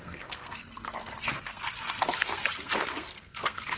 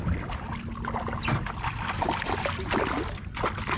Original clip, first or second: second